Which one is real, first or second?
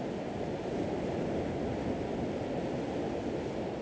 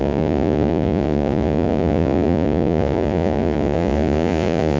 first